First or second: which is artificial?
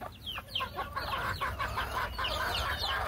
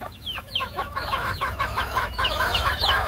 second